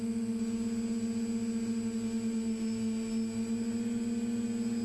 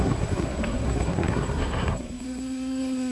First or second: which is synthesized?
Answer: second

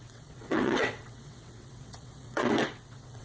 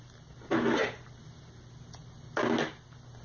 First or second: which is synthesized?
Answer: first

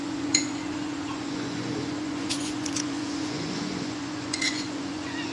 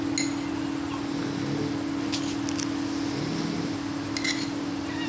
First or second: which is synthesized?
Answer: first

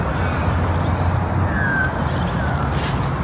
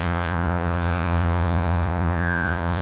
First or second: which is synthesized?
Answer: second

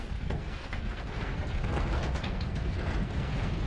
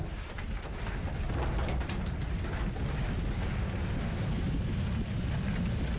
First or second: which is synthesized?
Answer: first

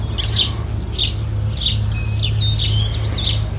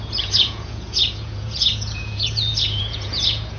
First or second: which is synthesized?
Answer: second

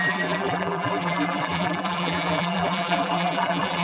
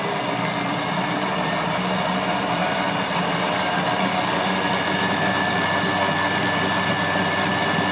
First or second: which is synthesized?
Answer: first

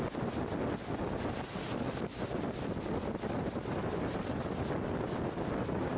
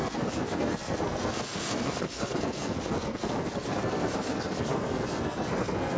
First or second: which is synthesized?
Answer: second